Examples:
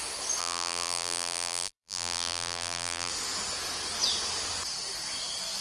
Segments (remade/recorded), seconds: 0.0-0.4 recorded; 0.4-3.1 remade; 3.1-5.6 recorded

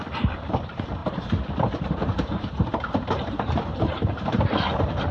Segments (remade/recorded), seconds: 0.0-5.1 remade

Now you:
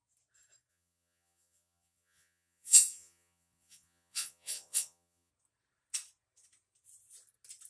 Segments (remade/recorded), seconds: 0.0-0.7 recorded; 0.7-5.3 remade; 5.3-7.7 recorded

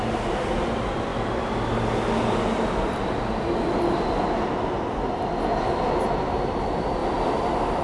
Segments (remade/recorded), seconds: 0.0-7.8 recorded

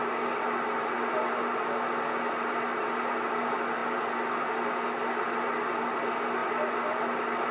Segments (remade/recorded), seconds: 0.0-7.5 recorded